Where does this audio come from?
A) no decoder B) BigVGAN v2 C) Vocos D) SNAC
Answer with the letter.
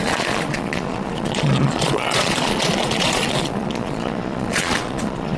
C